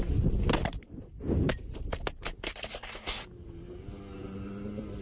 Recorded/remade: recorded